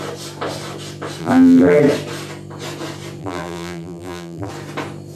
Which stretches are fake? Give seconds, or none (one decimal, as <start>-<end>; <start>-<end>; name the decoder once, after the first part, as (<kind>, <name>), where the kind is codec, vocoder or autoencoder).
1.2-1.8 (vocoder, BigVGAN v2); 3.2-4.5